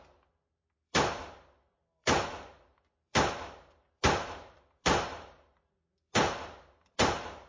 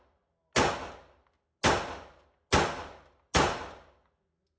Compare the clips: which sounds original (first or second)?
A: second